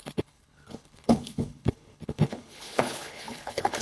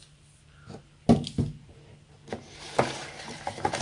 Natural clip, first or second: second